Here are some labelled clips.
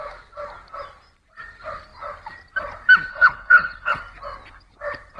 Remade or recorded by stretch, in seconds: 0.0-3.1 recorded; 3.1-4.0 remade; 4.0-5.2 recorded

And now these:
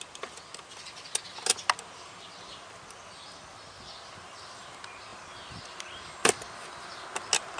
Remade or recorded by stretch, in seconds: 0.0-5.1 recorded; 5.1-5.8 remade; 5.8-7.6 recorded

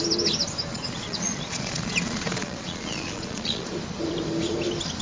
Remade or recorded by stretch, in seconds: 0.0-0.7 recorded; 0.7-3.7 remade; 3.7-5.0 recorded

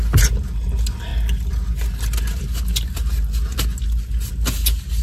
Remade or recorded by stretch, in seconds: 0.0-5.0 recorded

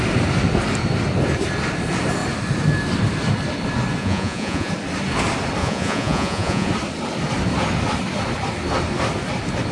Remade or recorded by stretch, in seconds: 0.0-4.0 recorded; 4.0-4.7 remade; 4.7-5.6 recorded; 5.6-6.7 remade; 6.7-9.7 recorded

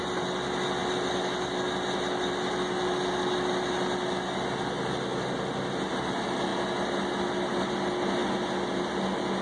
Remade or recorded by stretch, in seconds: 0.0-9.4 recorded